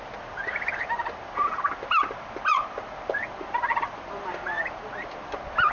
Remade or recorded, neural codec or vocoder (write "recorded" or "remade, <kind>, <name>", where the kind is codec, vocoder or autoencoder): recorded